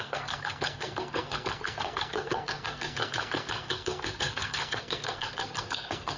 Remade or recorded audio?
remade